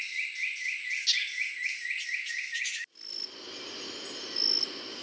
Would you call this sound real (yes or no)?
yes